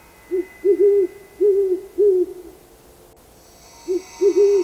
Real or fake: real